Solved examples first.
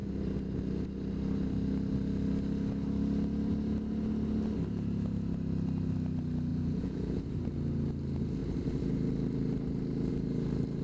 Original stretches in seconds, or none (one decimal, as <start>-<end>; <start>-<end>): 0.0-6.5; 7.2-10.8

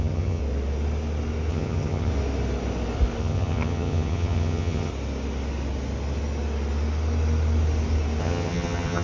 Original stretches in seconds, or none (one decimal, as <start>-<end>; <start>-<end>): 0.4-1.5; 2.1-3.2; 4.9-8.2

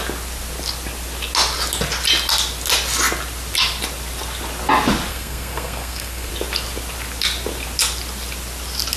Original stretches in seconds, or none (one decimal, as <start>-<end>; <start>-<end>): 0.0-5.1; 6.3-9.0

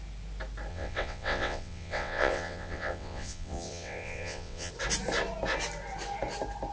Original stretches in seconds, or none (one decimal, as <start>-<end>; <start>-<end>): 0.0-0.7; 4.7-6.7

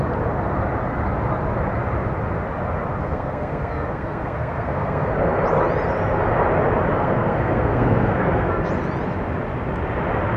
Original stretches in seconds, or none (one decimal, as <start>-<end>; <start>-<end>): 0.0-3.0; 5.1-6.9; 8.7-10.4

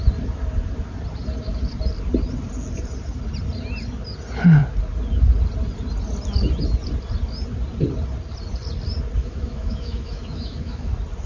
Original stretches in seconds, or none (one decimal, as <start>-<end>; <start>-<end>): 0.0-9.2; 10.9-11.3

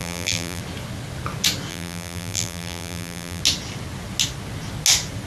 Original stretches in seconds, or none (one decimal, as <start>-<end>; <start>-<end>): 0.6-1.7; 3.4-5.3

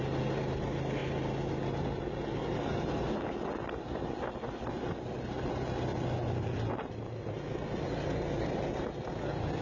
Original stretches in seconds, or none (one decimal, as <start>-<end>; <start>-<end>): 0.0-9.6